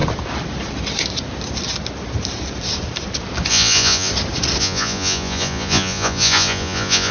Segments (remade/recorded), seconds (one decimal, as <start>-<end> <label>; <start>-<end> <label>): 0.0-3.5 recorded; 3.5-4.1 remade; 4.1-4.6 recorded; 4.6-7.1 remade